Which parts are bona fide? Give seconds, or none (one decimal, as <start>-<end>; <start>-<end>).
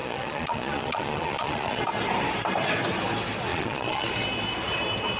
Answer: 1.8-3.5; 4.1-5.2